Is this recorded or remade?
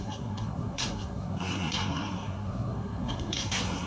remade